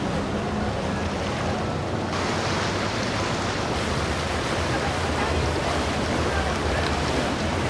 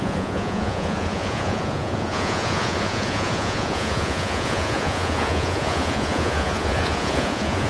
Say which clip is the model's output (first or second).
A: second